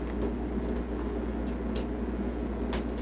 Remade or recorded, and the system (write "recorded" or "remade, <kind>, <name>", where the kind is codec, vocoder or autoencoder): recorded